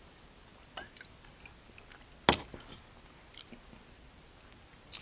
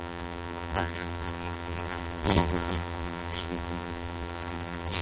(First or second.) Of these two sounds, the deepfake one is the second